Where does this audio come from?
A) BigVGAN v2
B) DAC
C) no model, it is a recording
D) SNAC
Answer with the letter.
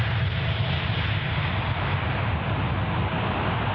C